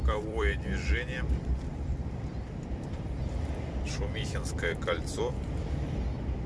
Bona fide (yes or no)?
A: no